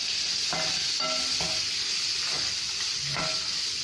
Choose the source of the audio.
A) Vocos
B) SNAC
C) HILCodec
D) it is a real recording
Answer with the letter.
D